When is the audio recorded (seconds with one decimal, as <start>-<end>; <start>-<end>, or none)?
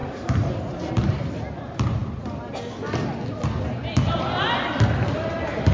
2.0-4.0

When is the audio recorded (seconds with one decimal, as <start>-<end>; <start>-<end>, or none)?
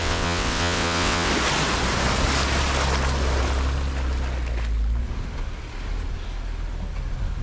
1.3-7.4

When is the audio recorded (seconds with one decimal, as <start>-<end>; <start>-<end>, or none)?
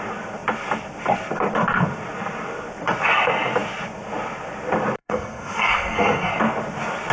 0.0-5.0; 6.3-7.1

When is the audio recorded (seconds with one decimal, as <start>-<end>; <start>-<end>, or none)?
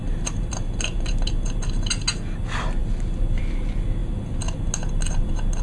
0.0-5.6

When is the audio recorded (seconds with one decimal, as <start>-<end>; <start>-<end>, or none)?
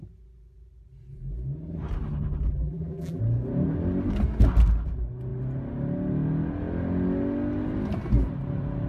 0.0-2.5; 3.2-8.9